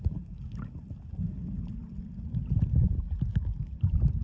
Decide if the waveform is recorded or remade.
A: recorded